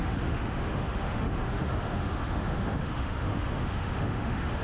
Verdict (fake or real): fake